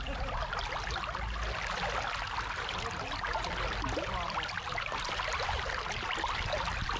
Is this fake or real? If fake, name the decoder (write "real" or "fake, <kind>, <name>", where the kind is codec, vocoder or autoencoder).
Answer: real